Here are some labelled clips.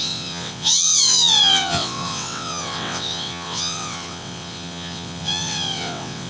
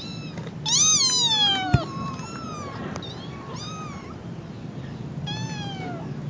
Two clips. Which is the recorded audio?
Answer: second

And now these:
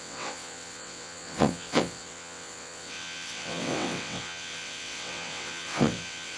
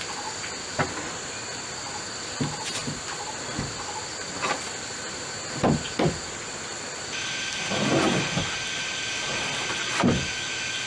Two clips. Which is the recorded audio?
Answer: second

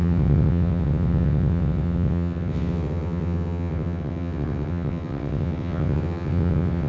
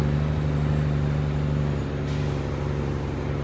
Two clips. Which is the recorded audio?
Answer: second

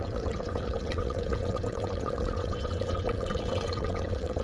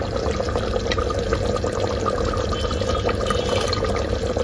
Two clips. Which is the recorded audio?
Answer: second